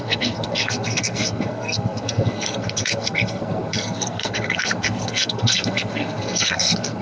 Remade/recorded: remade